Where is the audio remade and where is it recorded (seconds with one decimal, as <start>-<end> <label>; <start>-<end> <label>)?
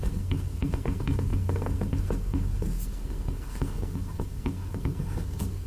0.0-5.7 remade